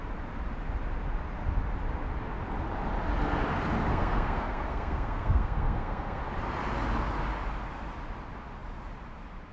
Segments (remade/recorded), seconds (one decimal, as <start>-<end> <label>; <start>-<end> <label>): 0.0-3.9 recorded; 3.9-6.2 remade; 6.2-9.5 recorded